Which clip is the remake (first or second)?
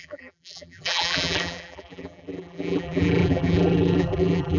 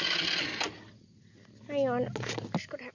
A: first